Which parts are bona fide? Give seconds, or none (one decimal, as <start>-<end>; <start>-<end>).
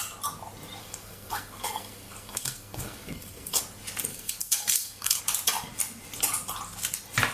0.0-0.8; 3.6-4.1; 5.2-7.3